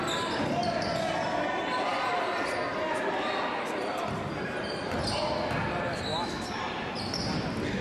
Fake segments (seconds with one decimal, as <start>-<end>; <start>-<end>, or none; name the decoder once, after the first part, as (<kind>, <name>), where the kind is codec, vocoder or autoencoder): 6.1-6.6 (autoencoder, DAC-VAE)